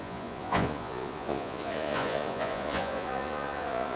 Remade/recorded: remade